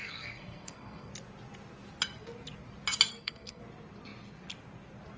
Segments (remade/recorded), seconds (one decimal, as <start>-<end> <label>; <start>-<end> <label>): 0.0-1.1 remade; 1.1-3.1 recorded; 3.1-3.6 remade; 3.6-5.2 recorded